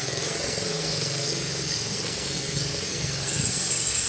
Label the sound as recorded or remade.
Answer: remade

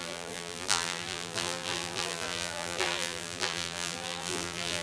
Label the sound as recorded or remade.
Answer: remade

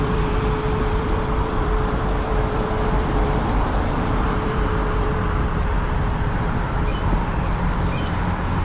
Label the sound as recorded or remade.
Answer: remade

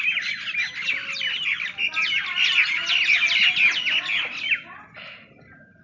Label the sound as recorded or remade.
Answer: recorded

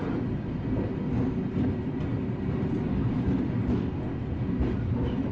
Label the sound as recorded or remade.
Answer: recorded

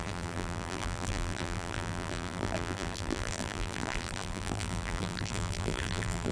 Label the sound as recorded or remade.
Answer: remade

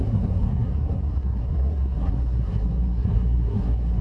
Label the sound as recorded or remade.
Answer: remade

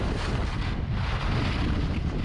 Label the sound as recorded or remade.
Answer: recorded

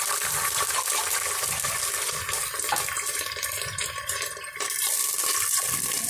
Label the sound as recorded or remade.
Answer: remade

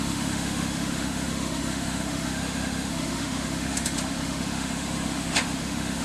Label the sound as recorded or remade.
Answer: remade